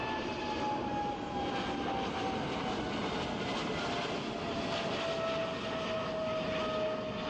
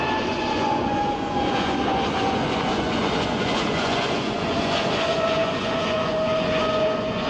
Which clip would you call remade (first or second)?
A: second